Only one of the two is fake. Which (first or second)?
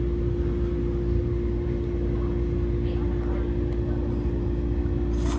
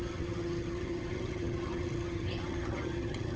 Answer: second